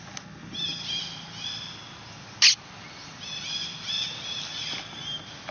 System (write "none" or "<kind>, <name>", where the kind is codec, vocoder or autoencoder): none